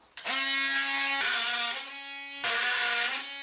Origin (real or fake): real